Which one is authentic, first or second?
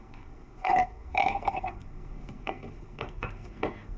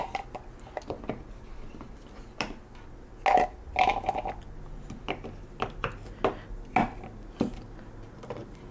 second